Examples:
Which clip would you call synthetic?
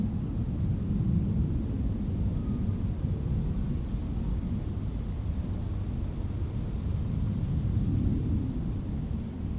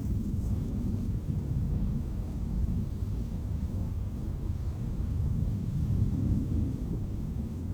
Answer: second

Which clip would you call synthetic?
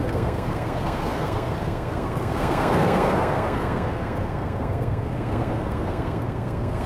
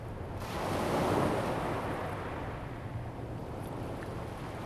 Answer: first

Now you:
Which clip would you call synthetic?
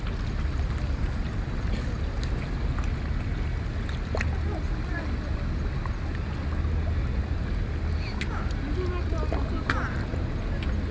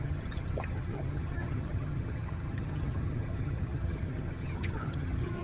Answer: second